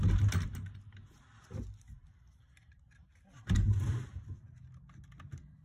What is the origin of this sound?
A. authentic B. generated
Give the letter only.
A